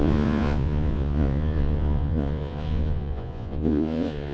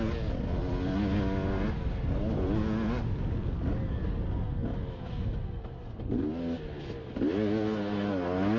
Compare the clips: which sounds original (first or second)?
second